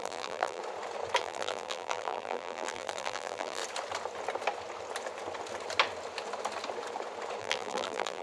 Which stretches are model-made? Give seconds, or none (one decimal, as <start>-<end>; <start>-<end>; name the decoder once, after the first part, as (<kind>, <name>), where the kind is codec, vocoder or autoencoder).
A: 0.0-0.6 (vocoder, BigVGAN v2); 1.2-3.6; 7.4-8.2